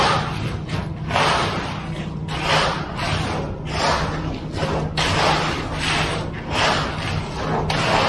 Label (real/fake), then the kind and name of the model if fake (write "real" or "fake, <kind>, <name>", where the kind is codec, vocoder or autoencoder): real